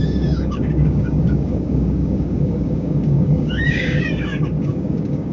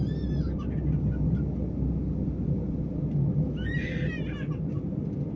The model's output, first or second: first